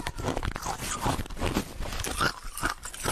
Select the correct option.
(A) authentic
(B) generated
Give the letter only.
A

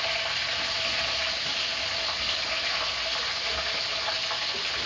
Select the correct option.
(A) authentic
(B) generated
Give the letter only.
A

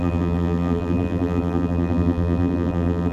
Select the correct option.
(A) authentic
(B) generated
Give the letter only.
B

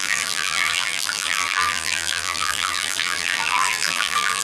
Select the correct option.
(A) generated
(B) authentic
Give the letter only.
A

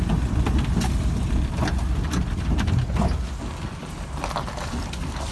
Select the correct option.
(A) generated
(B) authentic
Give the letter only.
B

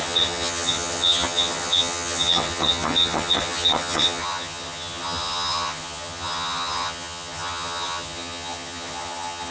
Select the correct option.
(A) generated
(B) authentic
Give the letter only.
A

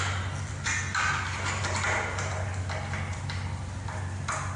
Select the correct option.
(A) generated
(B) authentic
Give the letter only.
B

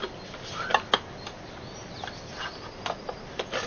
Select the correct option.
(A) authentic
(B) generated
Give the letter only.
A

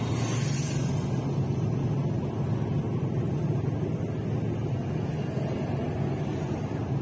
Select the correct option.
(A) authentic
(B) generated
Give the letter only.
A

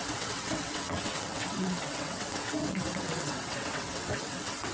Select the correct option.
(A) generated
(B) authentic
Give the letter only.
A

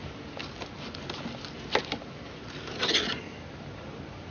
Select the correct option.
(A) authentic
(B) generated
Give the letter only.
A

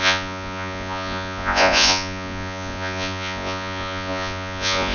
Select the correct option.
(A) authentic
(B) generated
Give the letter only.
B